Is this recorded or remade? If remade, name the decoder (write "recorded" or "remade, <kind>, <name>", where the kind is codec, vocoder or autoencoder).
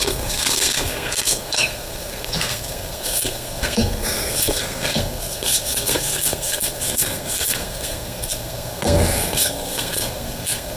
remade, codec, SNAC